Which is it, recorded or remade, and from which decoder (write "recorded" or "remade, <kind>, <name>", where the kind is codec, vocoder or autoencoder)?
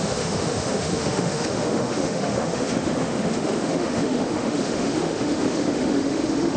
remade, autoencoder, DAC-VAE